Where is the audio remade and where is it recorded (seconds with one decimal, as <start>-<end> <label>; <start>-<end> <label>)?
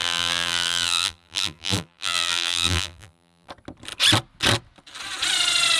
0.0-3.5 remade; 3.5-5.8 recorded